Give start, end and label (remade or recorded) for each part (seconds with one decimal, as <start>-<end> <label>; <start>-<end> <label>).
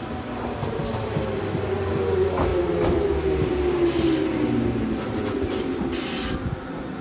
0.0-7.0 recorded